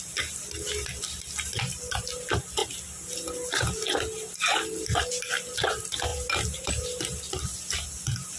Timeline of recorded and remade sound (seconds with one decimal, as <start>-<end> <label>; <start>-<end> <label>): 0.0-8.4 recorded